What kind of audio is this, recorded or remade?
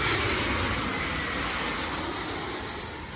recorded